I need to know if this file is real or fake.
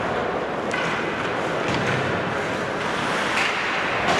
real